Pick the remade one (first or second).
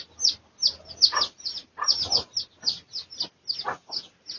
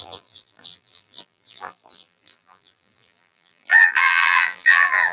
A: second